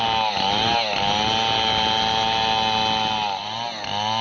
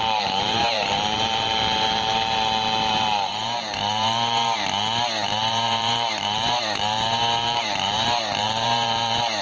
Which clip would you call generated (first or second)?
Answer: second